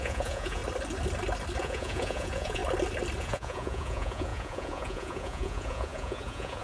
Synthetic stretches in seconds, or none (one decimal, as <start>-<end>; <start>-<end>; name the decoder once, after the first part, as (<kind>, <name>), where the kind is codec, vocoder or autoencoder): 0.0-0.6 (vocoder, Vocos); 1.6-2.6; 3.2-6.6